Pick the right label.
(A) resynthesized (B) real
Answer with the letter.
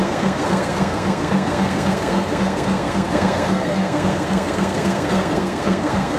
A